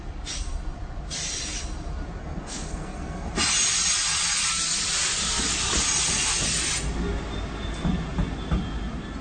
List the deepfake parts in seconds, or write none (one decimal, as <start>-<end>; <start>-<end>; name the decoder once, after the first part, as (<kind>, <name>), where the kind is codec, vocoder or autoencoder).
2.2-3.3 (codec, SNAC)